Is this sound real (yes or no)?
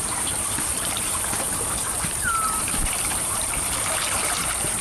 no